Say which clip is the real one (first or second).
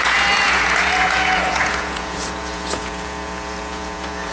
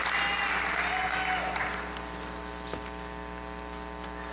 second